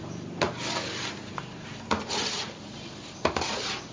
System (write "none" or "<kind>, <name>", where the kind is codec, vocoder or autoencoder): none